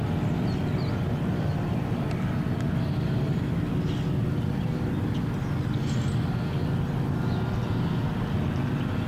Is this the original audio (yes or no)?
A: yes